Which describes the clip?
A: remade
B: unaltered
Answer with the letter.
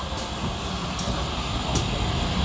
B